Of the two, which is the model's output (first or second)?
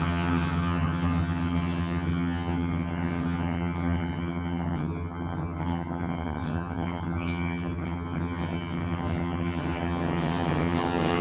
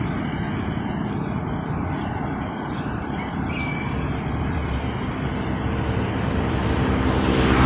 first